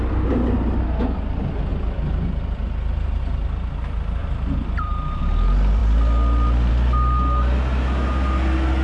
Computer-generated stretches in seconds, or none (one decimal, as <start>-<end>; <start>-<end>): 1.7-3.2; 4.2-5.2